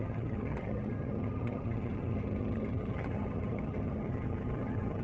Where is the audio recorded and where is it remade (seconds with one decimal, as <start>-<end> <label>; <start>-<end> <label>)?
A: 0.0-5.0 remade